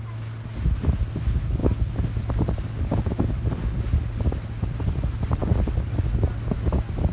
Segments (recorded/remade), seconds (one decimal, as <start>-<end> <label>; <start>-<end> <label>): 0.0-7.1 recorded